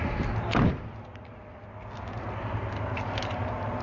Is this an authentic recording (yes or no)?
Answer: yes